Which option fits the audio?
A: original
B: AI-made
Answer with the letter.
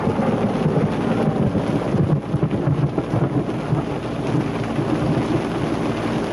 A